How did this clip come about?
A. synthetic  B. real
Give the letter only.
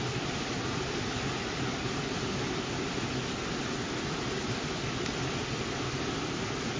B